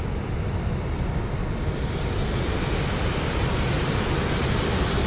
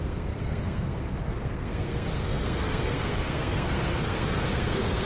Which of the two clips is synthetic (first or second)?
second